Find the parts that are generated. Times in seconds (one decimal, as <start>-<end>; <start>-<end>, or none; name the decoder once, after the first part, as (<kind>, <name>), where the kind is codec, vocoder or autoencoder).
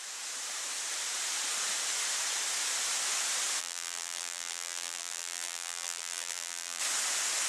3.6-6.8 (vocoder, BigVGAN v2)